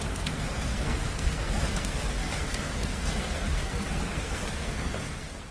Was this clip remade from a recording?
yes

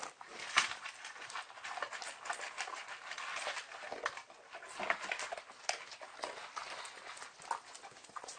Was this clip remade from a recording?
no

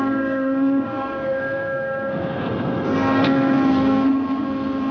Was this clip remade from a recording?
yes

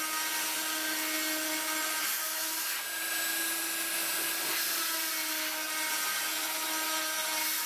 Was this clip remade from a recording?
no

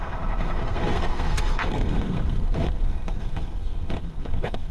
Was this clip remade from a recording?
yes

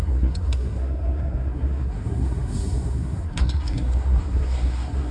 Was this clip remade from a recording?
yes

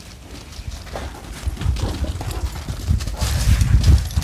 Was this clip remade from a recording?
no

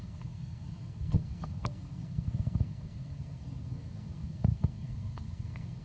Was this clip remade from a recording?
yes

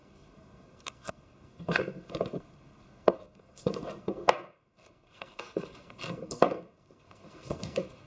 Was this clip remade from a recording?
yes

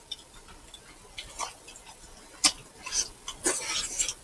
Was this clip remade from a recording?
no